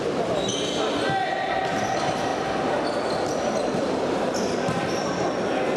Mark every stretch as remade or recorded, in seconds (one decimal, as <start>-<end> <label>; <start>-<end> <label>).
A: 0.0-0.5 remade; 0.5-1.7 recorded; 1.7-2.3 remade; 2.3-5.8 recorded